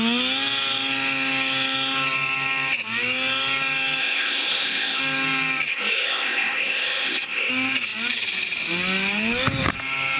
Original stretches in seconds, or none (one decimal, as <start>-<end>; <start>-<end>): 0.0-4.0; 5.0-5.7; 7.5-10.2